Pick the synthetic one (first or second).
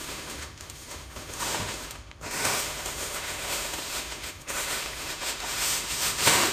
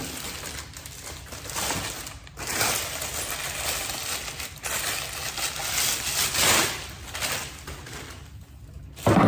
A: first